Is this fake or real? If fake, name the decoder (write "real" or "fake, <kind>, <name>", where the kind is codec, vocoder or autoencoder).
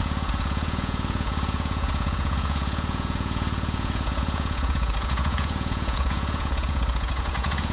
fake, vocoder, Vocos